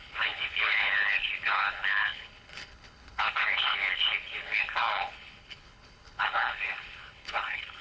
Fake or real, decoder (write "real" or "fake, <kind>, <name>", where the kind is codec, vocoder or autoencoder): fake, codec, HILCodec